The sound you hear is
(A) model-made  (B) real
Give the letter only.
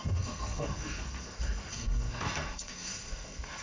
A